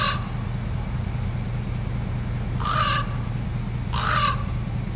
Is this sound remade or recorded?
recorded